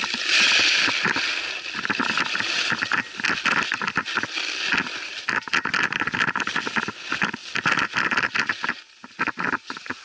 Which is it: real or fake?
real